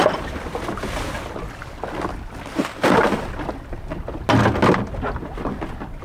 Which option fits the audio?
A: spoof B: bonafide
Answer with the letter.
B